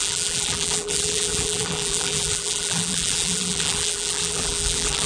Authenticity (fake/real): fake